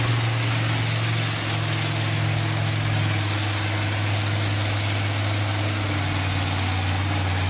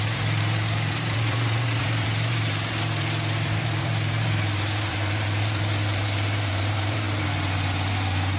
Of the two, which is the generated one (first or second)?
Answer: second